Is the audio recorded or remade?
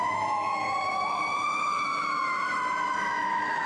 remade